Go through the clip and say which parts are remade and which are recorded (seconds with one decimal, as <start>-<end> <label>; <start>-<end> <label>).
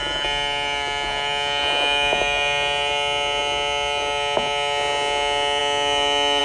0.0-6.4 recorded